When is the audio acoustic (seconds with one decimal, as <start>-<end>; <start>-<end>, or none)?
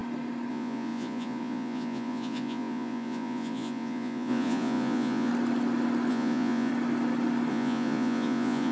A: 0.0-0.5; 5.3-6.1; 6.7-7.5